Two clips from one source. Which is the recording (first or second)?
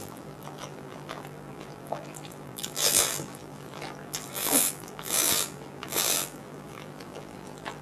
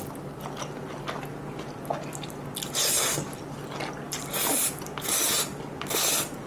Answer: second